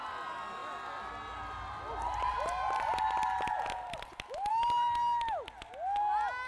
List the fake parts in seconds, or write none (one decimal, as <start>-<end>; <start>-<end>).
none